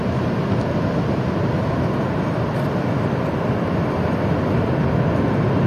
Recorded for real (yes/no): yes